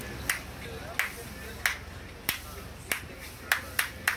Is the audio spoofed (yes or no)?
no